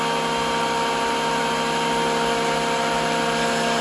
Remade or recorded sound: recorded